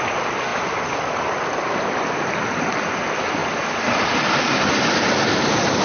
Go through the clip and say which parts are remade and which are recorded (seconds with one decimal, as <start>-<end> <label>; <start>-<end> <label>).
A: 0.0-0.5 recorded; 0.5-3.0 remade; 3.0-3.4 recorded; 3.4-4.3 remade; 4.3-5.8 recorded